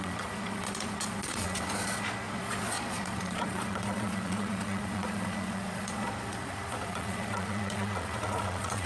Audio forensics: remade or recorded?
remade